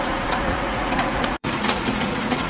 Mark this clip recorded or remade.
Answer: remade